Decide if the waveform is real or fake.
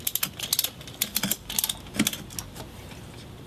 real